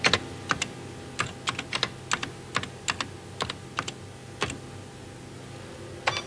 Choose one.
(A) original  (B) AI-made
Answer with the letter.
A